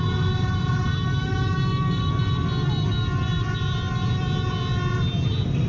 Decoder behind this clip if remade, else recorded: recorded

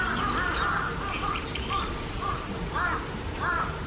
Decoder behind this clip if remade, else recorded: recorded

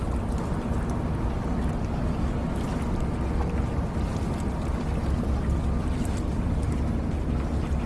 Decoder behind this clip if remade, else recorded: recorded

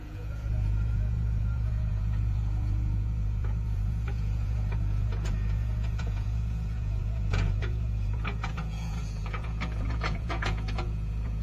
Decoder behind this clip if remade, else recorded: remade, vocoder, Vocos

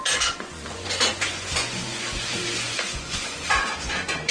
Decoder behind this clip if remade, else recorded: remade, vocoder, Vocos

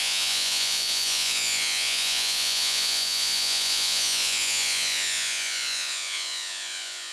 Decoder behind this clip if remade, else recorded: remade, vocoder, Vocos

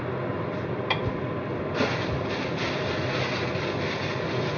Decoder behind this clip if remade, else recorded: recorded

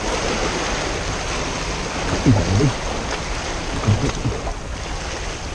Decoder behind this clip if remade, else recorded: recorded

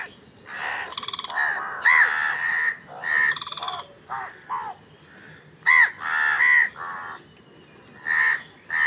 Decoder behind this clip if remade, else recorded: recorded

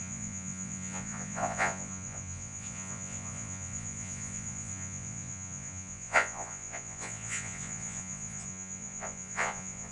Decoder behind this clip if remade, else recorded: remade, vocoder, Vocos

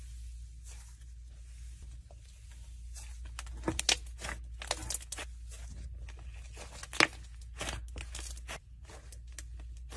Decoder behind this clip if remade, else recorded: recorded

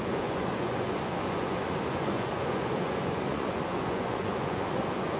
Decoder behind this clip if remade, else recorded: remade, vocoder, Vocos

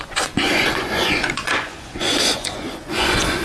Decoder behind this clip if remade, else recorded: remade, vocoder, Vocos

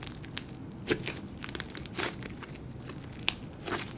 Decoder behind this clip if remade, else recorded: recorded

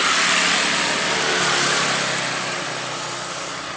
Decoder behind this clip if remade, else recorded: recorded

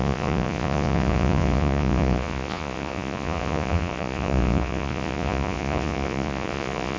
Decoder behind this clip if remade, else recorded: remade, vocoder, Vocos